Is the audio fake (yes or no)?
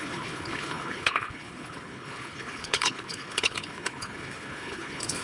yes